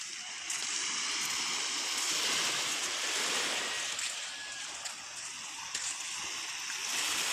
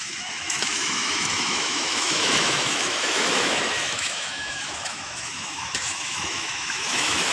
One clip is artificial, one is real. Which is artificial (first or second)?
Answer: second